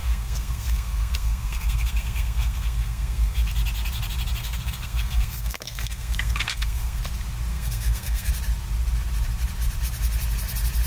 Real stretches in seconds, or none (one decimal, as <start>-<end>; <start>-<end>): 3.5-4.4; 7.0-7.5; 8.3-10.9